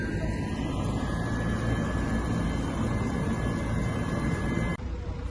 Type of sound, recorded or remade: recorded